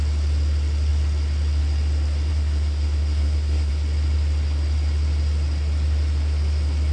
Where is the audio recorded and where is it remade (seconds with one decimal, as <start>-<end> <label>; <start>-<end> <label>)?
0.0-2.3 recorded; 2.3-3.7 remade; 3.7-6.9 recorded